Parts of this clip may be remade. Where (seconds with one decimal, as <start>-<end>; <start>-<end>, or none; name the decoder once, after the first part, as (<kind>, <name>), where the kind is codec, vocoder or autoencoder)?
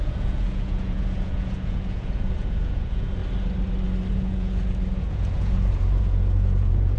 0.0-3.2 (vocoder, Vocos); 4.1-7.0